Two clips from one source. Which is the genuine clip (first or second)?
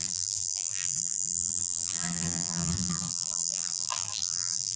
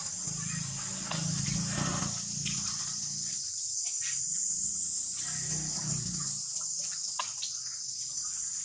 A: second